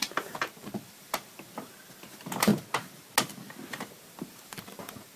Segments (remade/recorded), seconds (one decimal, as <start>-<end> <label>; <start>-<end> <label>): 0.0-2.5 remade; 2.5-3.7 recorded; 3.7-5.2 remade